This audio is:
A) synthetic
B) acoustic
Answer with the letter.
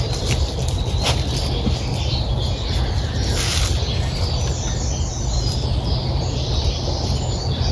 B